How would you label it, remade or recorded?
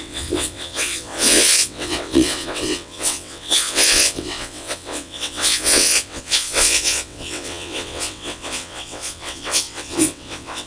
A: remade